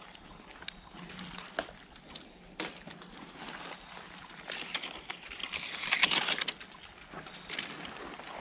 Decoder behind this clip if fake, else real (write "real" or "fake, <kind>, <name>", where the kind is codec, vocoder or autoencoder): real